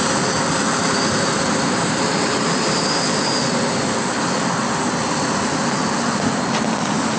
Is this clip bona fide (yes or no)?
yes